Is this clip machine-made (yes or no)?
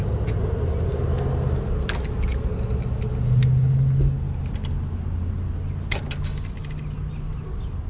no